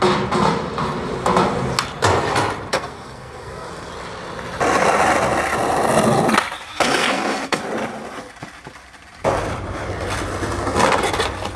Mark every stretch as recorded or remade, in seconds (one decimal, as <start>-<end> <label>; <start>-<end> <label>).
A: 0.0-2.7 recorded; 2.7-3.9 remade; 3.9-6.7 recorded; 6.7-7.6 remade; 7.6-11.6 recorded